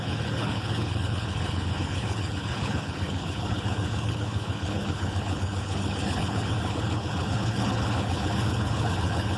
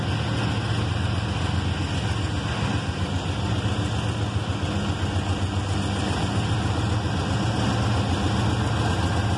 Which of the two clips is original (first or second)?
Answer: second